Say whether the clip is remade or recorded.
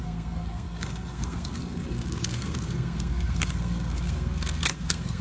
remade